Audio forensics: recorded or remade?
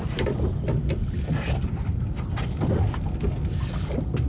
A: recorded